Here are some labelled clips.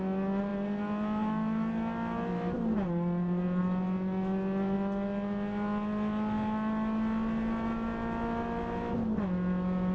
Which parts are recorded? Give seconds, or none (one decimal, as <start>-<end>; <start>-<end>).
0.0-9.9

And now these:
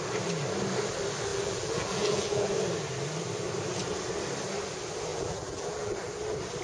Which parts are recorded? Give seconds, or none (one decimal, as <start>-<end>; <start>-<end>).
0.0-1.3; 2.5-5.1; 5.9-6.6

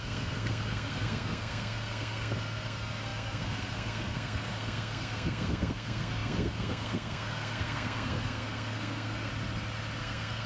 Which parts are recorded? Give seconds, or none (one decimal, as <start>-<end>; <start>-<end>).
9.3-10.0

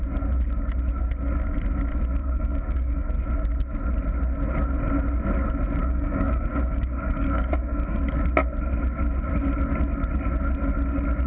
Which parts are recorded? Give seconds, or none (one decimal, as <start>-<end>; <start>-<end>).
0.0-2.2; 3.1-5.8; 8.0-11.3

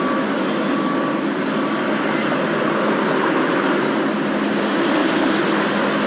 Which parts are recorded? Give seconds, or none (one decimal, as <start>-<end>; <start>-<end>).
0.0-5.0; 5.6-6.1